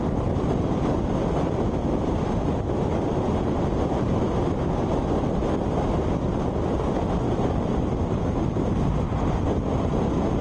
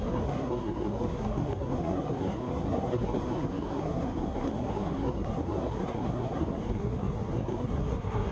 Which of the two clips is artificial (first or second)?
second